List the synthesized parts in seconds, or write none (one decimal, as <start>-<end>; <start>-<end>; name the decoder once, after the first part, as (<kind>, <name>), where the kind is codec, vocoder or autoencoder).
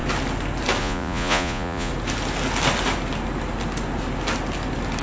0.8-1.9 (vocoder, Vocos)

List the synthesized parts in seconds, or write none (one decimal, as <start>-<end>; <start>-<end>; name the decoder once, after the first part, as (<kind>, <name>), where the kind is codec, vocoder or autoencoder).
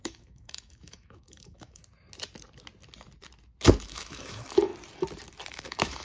0.0-1.8 (autoencoder, DAC-VAE); 3.8-4.7; 5.5-6.0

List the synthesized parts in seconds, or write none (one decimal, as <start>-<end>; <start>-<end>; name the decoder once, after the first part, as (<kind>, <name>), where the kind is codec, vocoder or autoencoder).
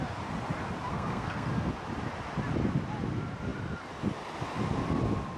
0.9-1.5 (codec, SNAC)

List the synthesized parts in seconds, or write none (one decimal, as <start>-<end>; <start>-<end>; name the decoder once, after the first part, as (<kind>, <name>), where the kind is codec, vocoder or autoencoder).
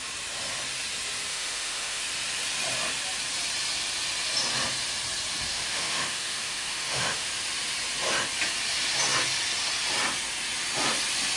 1.3-2.0 (autoencoder, DAC-VAE); 5.5-7.3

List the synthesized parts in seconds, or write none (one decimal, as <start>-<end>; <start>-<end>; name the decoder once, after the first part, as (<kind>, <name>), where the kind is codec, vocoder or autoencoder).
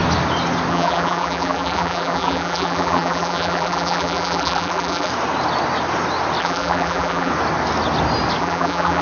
0.7-5.1 (vocoder, BigVGAN v2); 6.4-7.3; 8.4-9.0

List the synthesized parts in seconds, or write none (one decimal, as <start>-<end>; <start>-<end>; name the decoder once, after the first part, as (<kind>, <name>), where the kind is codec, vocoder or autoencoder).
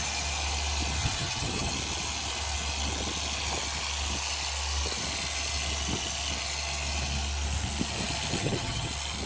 1.0-1.7 (vocoder, HiFi-GAN); 8.4-8.9